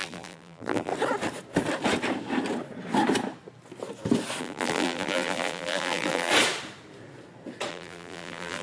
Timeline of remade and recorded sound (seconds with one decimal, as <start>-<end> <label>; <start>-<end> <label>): 0.0-0.9 remade; 0.9-4.4 recorded; 4.4-6.3 remade; 6.3-7.7 recorded; 7.7-8.6 remade